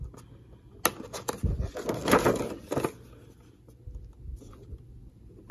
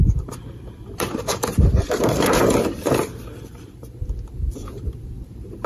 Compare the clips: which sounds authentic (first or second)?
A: first